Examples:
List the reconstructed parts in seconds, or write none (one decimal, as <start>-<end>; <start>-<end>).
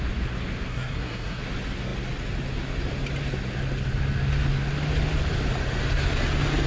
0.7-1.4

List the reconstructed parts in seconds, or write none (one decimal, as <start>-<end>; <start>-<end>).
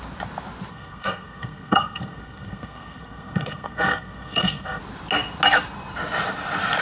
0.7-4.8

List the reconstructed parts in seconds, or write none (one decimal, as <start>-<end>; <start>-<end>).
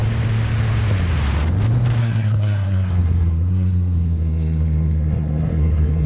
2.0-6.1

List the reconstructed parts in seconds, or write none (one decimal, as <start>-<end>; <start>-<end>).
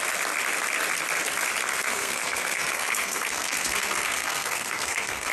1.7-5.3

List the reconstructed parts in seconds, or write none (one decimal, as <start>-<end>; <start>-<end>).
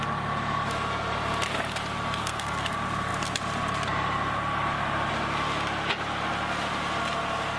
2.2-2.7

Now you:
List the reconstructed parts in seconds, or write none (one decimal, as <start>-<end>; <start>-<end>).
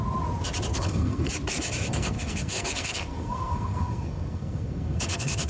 0.7-1.3; 1.9-5.5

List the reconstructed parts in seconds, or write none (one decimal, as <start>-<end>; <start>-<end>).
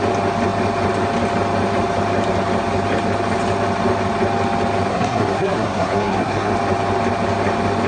4.9-6.5